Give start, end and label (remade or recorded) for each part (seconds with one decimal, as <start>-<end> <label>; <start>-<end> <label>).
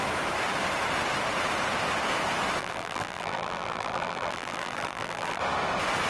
0.0-2.6 recorded; 2.6-5.4 remade; 5.4-6.1 recorded